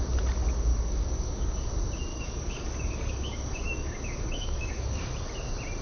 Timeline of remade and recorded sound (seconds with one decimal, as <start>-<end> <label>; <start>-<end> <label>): 0.0-0.7 recorded; 0.7-1.7 remade; 1.7-2.1 recorded; 2.1-5.0 remade; 5.0-5.8 recorded

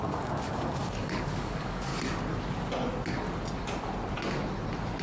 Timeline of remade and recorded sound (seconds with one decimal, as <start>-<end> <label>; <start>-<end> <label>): 0.0-1.9 remade; 1.9-5.0 recorded

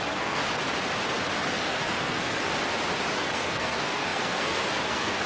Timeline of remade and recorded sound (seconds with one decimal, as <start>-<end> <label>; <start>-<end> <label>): 0.0-0.4 remade; 0.4-1.4 recorded; 1.4-2.5 remade; 2.5-3.2 recorded; 3.2-5.3 remade

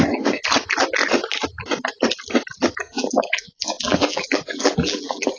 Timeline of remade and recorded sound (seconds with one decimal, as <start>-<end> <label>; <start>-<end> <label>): 0.0-2.9 recorded; 2.9-5.4 remade

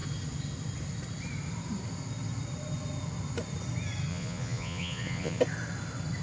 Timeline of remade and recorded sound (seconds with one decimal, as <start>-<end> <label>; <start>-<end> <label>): 0.0-4.1 recorded; 4.1-5.4 remade; 5.4-6.2 recorded

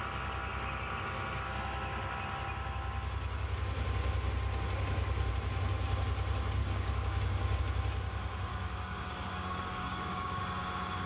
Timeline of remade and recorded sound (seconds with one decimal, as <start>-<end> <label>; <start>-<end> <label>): 0.0-6.6 recorded; 6.6-7.6 remade; 7.6-8.5 recorded; 8.5-10.4 remade; 10.4-11.1 recorded